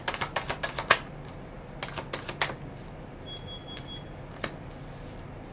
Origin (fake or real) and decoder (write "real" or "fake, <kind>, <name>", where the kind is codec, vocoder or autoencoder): real